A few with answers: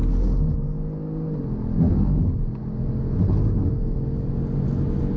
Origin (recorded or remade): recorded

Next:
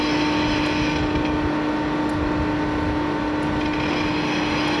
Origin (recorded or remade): recorded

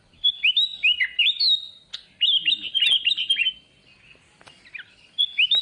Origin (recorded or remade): recorded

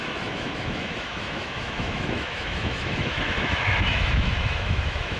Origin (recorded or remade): remade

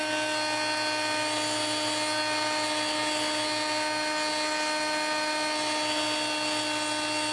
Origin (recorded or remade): recorded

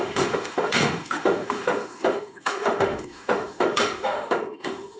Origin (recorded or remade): remade